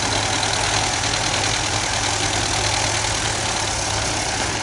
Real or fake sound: real